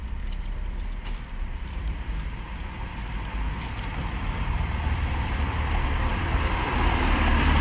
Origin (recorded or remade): remade